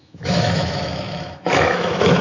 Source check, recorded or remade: remade